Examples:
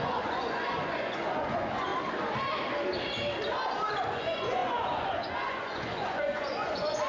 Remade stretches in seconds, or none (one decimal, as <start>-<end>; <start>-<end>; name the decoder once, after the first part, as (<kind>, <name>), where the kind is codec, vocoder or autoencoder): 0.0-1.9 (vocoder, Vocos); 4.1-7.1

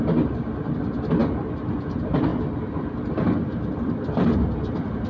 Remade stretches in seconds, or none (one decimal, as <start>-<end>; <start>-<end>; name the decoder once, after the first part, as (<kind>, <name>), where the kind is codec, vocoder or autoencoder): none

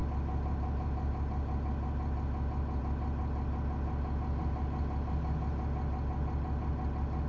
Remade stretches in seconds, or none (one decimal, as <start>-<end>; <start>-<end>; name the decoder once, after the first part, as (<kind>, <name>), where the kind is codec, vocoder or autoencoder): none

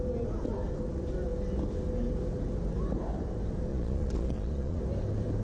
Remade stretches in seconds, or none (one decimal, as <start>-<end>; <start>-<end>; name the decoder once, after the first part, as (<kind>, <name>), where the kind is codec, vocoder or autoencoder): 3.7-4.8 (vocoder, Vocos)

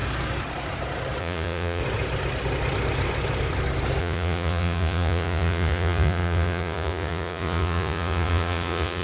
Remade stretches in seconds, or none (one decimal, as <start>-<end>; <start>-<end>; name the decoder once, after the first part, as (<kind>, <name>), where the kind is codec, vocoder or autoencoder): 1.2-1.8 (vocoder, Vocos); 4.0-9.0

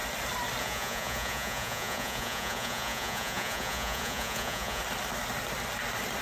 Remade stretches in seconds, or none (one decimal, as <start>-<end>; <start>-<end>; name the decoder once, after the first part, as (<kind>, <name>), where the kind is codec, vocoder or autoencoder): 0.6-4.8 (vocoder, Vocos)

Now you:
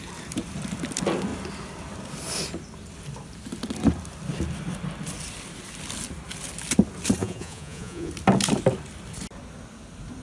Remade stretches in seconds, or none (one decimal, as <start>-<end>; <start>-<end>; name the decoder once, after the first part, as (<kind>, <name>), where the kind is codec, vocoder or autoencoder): 7.2-8.1 (vocoder, Vocos)